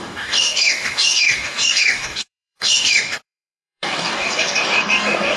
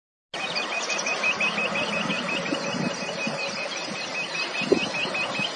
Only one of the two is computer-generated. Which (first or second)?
first